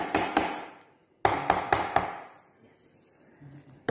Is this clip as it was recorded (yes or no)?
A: yes